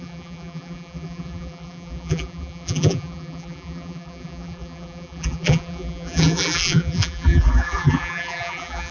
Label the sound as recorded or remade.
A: remade